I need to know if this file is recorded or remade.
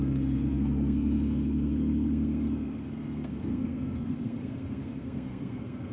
remade